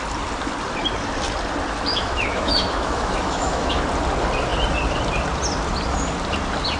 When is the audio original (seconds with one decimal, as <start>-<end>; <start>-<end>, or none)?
0.0-1.9; 3.8-6.8